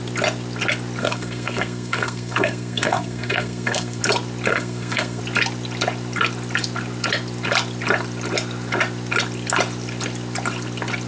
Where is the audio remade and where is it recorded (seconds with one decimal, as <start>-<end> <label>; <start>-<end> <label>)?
0.0-1.0 recorded; 1.0-4.0 remade; 4.0-4.5 recorded; 4.5-5.2 remade; 5.2-11.1 recorded